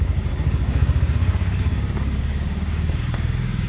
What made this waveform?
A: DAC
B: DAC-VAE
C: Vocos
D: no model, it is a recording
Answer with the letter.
A